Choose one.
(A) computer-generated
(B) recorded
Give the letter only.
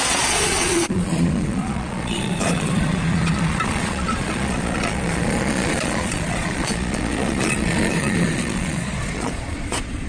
A